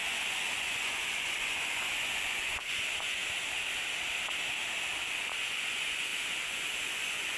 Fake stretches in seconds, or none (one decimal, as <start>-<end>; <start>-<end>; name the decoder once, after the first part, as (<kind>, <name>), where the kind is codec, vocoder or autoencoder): 0.0-3.2 (vocoder, Vocos); 5.1-7.4